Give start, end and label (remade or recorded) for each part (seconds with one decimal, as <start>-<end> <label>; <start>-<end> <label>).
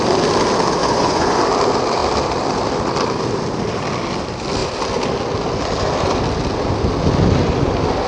0.0-0.8 recorded; 0.8-1.4 remade; 1.4-8.1 recorded